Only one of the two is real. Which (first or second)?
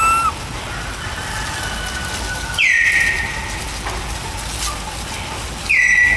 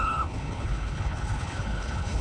first